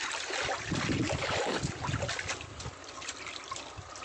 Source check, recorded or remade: recorded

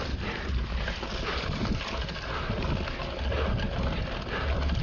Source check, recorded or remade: recorded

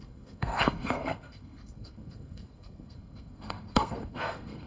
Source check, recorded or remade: remade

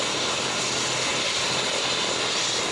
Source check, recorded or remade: recorded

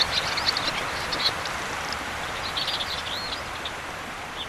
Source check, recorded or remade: recorded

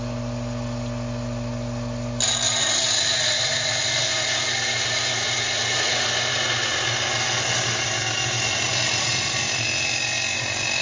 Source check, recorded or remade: recorded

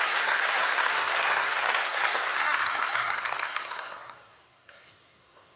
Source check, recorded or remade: remade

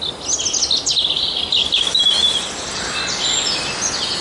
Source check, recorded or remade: recorded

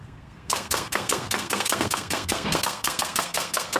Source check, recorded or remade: remade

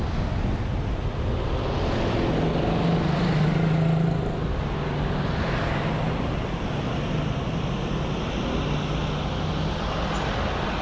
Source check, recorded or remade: recorded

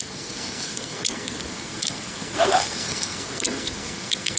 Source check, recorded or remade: remade